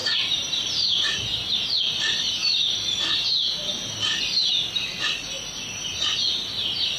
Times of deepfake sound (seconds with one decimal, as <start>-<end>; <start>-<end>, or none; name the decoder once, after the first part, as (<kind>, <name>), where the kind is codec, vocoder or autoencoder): 0.0-1.2 (vocoder, BigVGAN v2)